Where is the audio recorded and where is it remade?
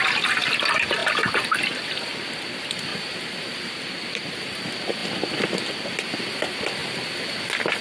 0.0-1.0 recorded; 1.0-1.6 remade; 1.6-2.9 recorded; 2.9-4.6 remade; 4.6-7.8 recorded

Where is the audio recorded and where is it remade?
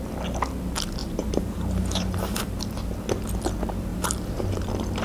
0.0-1.0 recorded; 1.0-2.6 remade; 2.6-3.9 recorded; 3.9-4.6 remade; 4.6-5.0 recorded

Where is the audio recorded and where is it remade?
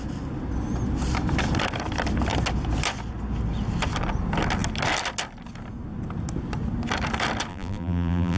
0.0-7.5 recorded; 7.5-8.4 remade